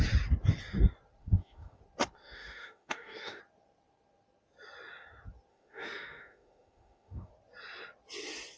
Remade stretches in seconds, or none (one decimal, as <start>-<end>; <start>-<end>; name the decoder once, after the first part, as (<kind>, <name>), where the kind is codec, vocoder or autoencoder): 1.2-1.8 (autoencoder, DAC-VAE); 2.2-3.4; 5.5-7.3